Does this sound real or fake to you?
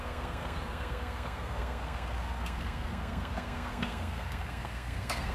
fake